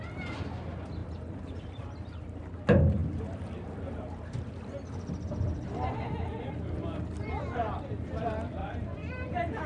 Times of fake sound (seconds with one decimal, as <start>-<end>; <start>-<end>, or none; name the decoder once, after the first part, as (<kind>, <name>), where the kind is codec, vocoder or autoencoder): 1.0-2.4 (vocoder, BigVGAN v2); 8.6-9.7